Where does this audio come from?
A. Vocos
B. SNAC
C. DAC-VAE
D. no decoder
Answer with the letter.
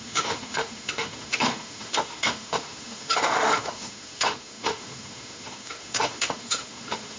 C